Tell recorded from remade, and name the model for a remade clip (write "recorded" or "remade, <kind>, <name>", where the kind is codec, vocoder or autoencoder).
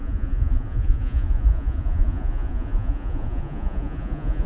remade, vocoder, Vocos